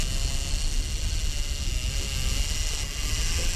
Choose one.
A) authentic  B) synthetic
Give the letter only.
A